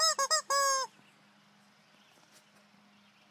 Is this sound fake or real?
real